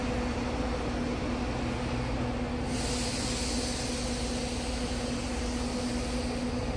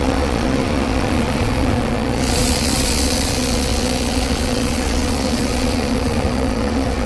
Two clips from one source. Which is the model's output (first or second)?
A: second